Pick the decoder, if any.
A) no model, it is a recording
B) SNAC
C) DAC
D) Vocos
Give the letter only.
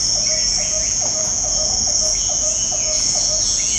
D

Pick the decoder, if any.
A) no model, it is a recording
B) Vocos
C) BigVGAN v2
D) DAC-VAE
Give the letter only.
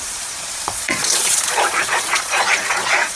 B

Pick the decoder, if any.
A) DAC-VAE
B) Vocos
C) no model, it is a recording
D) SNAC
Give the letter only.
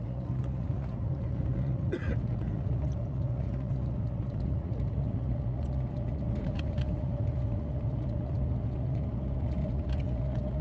B